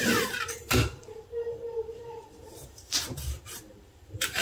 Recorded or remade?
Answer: remade